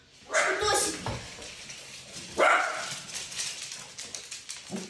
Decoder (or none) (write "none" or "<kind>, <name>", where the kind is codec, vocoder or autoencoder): none